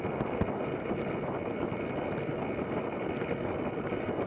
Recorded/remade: recorded